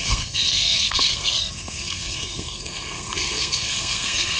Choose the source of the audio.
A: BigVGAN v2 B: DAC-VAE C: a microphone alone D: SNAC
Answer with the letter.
D